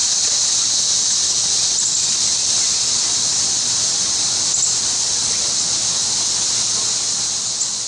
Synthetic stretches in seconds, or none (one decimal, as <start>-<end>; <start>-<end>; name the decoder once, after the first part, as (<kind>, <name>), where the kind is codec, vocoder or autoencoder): none